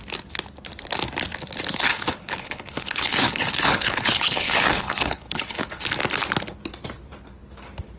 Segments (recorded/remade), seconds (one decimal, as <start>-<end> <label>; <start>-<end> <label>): 0.0-1.9 recorded; 1.9-5.8 remade; 5.8-8.0 recorded